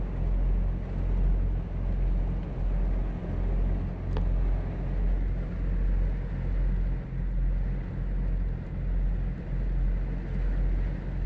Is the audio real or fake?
real